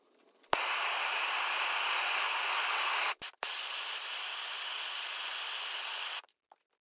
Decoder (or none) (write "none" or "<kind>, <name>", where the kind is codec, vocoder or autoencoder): none